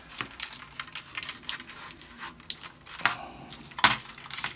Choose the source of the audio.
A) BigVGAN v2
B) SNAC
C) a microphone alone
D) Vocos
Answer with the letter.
C